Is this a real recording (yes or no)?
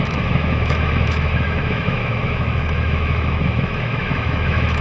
no